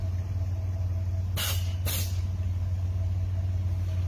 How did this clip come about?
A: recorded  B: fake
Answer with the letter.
A